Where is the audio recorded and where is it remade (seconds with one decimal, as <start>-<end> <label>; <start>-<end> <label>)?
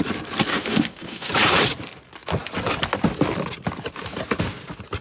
0.0-0.5 recorded; 0.5-1.3 remade; 1.3-5.0 recorded